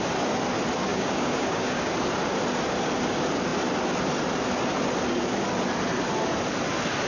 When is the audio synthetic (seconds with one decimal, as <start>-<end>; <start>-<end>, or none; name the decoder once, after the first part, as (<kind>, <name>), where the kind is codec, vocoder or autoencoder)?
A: 0.9-1.9 (codec, DAC)